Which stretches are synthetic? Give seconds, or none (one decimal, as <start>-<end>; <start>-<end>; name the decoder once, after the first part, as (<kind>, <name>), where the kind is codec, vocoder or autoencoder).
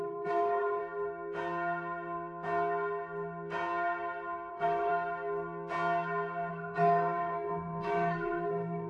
0.0-0.8 (codec, SNAC); 4.5-4.9; 6.5-8.9